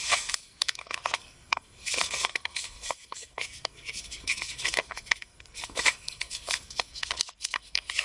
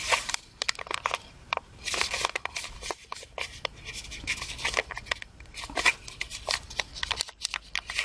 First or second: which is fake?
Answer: first